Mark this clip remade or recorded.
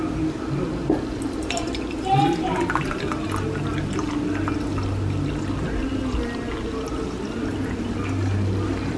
recorded